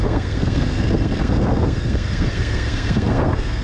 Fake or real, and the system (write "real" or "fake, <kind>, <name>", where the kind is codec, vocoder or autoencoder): fake, codec, SNAC